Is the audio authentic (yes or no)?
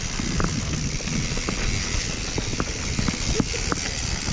yes